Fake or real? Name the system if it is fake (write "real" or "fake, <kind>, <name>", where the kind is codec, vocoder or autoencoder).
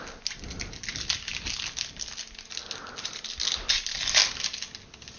real